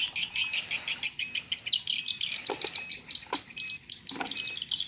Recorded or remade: recorded